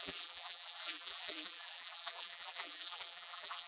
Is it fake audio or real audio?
fake